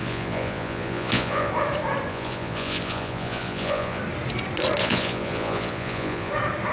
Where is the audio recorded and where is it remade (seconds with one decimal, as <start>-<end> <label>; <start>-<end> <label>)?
0.0-1.5 remade; 1.5-2.1 recorded; 2.1-4.0 remade; 4.0-4.8 recorded; 4.8-6.3 remade; 6.3-6.7 recorded

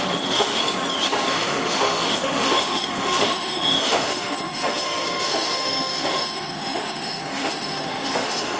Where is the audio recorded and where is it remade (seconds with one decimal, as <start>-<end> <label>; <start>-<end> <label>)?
0.0-0.6 remade; 0.6-1.3 recorded; 1.3-8.6 remade

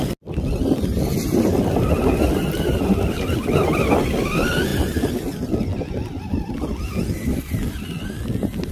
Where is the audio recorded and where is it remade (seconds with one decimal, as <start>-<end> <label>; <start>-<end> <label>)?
0.0-8.7 recorded

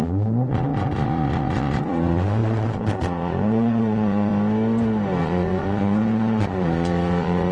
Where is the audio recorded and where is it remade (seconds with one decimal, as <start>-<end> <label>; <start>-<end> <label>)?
0.0-4.3 remade; 4.3-5.2 recorded; 5.2-7.5 remade